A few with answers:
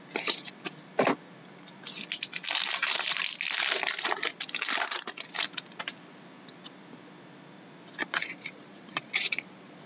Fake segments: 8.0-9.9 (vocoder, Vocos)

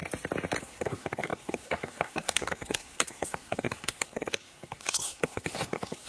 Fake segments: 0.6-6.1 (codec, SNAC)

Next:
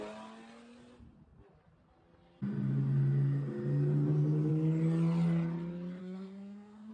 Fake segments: 6.0-6.9 (codec, SNAC)

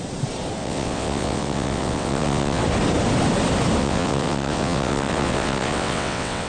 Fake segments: 0.6-2.6 (vocoder, WaveNeXt); 3.8-6.5

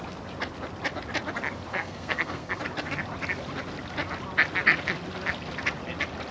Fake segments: 1.7-2.6 (codec, SNAC)